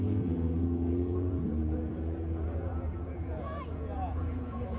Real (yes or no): no